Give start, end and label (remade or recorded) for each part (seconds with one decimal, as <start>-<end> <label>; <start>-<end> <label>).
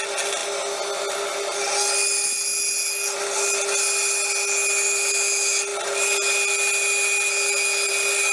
0.0-8.3 recorded